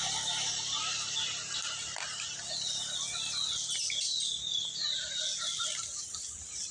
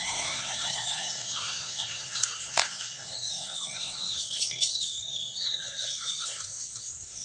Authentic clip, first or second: first